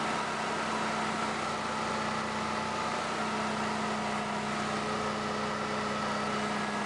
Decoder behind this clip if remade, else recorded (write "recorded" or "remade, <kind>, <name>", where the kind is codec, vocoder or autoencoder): recorded